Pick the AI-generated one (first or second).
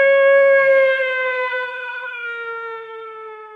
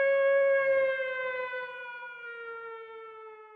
first